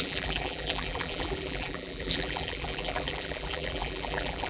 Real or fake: fake